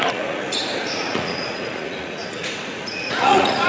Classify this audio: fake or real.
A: fake